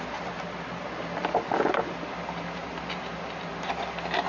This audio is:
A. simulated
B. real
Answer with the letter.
B